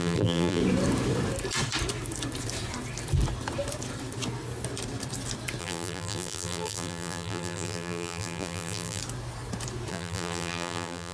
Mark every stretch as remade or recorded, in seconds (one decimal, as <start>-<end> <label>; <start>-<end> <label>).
0.0-0.6 remade; 0.6-5.6 recorded; 5.6-9.0 remade; 9.0-9.9 recorded; 9.9-11.1 remade